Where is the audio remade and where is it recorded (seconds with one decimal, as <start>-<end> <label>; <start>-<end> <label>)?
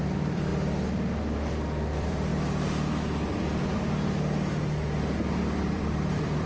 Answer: 0.0-0.5 remade; 0.5-1.5 recorded; 1.5-2.3 remade; 2.3-5.7 recorded; 5.7-6.5 remade